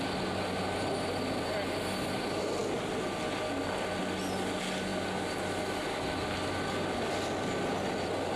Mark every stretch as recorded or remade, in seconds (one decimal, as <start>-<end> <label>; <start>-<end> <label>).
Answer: 0.0-8.4 recorded